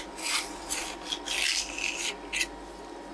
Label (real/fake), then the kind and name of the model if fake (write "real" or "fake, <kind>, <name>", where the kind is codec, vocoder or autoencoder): real